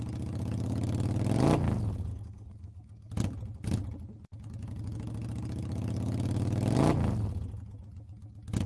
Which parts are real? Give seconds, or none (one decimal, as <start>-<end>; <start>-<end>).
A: 0.0-2.1; 3.1-8.7